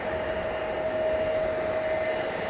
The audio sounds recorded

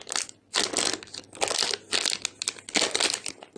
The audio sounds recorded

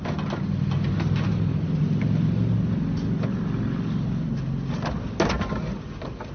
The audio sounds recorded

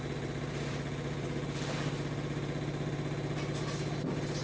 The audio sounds recorded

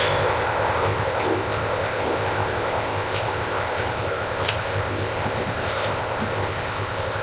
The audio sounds remade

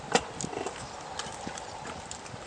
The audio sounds recorded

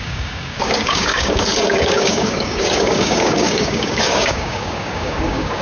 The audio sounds remade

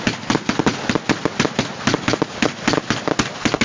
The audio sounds recorded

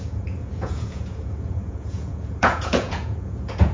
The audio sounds remade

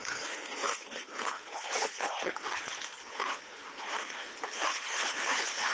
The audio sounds remade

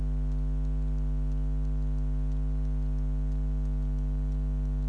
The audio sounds recorded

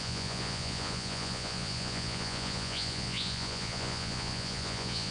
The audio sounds remade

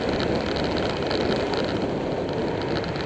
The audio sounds recorded